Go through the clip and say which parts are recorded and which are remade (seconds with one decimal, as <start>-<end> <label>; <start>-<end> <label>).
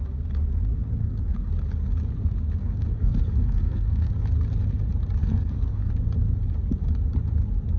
0.0-1.0 recorded; 1.0-1.5 remade; 1.5-2.6 recorded; 2.6-4.1 remade; 4.1-5.2 recorded; 5.2-5.9 remade; 5.9-7.8 recorded